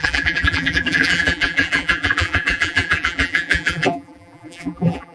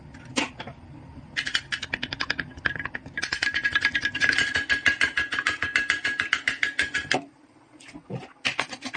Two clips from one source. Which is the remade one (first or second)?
first